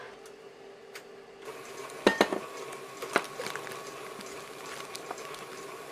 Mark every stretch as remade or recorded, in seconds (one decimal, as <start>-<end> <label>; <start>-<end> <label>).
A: 0.0-5.9 recorded